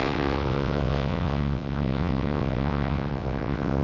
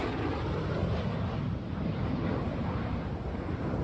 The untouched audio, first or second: second